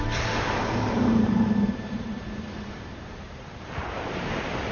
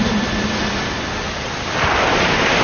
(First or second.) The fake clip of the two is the first